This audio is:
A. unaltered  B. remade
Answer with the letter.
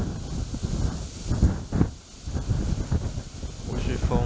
A